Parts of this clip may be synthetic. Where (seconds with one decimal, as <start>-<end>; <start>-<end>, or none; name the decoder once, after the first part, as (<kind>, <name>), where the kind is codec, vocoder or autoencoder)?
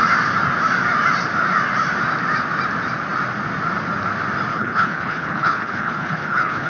4.5-6.7 (codec, HILCodec)